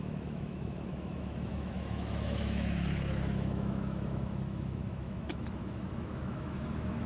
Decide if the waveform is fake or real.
fake